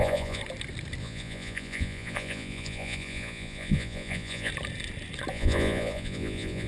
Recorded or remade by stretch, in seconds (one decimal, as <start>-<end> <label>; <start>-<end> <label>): 0.0-0.4 remade; 0.4-1.0 recorded; 1.0-4.5 remade; 4.5-5.3 recorded; 5.3-6.7 remade

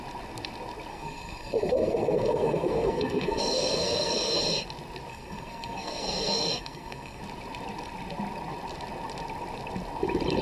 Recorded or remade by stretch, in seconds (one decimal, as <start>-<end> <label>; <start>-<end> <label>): 0.0-0.9 recorded; 0.9-4.4 remade; 4.4-5.1 recorded; 5.1-7.2 remade; 7.2-10.4 recorded